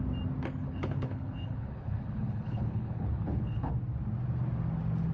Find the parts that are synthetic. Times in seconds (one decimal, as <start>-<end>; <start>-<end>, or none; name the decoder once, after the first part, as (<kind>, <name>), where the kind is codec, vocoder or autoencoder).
0.6-3.7 (codec, HILCodec)

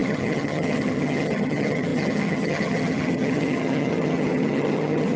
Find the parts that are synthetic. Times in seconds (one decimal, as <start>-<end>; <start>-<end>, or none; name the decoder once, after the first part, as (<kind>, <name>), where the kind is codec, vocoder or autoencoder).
0.0-5.2 (vocoder, HiFi-GAN)

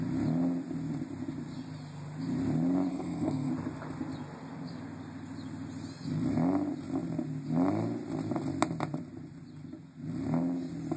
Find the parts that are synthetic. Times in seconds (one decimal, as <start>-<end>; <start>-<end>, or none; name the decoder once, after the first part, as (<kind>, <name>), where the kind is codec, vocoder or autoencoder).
2.9-3.5 (codec, SNAC)